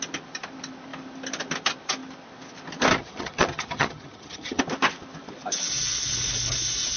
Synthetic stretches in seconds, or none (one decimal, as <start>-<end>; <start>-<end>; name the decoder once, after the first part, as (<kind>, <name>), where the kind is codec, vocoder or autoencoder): 3.0-4.6 (vocoder, HiFi-GAN)